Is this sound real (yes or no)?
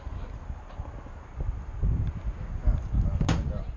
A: yes